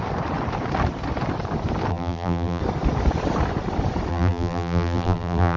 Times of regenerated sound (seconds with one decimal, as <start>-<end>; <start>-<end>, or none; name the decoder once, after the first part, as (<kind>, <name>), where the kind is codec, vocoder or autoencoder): 1.9-2.6 (vocoder, BigVGAN v2); 4.1-5.6